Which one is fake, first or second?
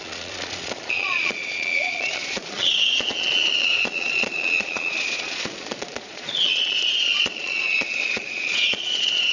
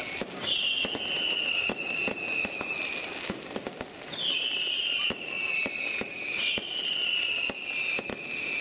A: first